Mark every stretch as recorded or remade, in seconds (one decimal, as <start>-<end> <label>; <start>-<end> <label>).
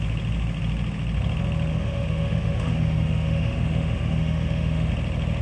0.0-1.7 recorded; 1.7-4.9 remade; 4.9-5.4 recorded